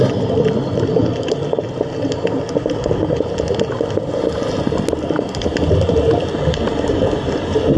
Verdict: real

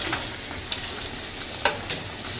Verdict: real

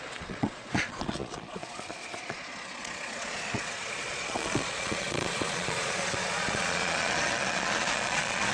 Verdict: fake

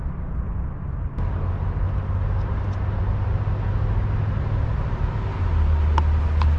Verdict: real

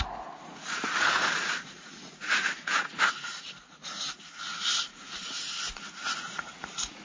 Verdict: fake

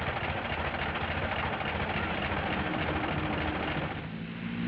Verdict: real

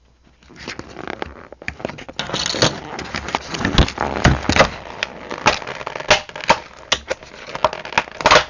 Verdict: real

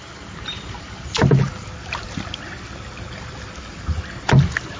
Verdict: real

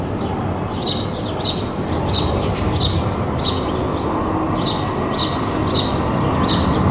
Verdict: real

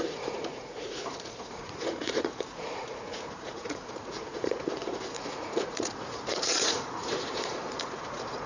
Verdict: fake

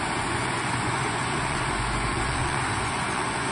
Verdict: fake